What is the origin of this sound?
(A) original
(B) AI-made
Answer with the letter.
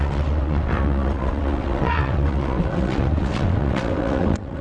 B